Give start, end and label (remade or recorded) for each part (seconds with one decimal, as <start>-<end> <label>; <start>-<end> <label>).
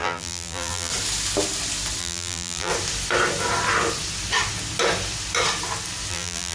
0.0-0.9 remade; 0.9-2.0 recorded; 2.0-2.7 remade; 2.7-6.1 recorded; 6.1-6.5 remade